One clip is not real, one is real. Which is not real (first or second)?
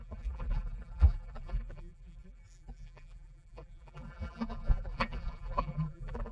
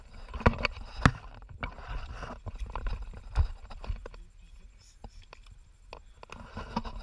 first